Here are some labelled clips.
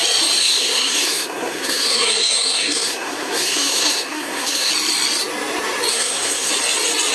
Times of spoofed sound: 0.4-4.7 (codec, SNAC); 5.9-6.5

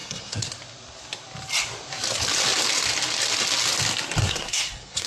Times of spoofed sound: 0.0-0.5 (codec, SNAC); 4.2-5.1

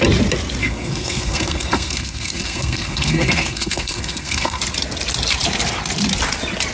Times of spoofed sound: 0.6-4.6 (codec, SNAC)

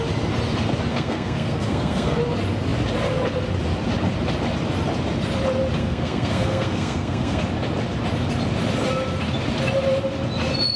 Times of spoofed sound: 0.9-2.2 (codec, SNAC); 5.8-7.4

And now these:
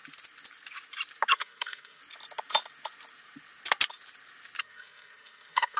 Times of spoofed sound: 1.3-2.0 (codec, SNAC); 4.6-5.8